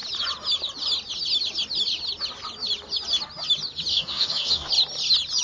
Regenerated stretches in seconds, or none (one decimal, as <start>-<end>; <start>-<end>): 3.9-4.7